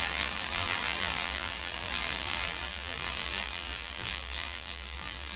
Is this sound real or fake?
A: fake